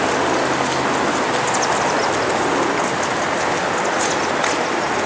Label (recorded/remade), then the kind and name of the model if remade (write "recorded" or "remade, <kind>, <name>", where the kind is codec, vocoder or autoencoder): recorded